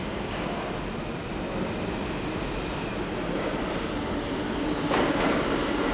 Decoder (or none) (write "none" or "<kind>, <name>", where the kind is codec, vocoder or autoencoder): none